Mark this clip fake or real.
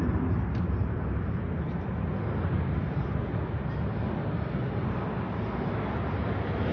real